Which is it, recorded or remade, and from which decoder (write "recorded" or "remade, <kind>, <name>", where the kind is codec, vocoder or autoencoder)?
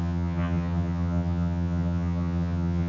remade, vocoder, HiFi-GAN